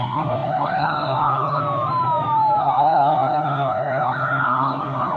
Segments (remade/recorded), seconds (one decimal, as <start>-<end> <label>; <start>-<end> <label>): 0.0-1.6 remade; 1.6-2.6 recorded; 2.6-5.2 remade